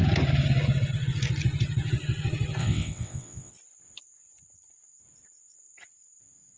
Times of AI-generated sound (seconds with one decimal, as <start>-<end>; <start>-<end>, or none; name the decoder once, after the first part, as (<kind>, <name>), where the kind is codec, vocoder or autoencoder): 2.6-3.5 (vocoder, WaveNeXt)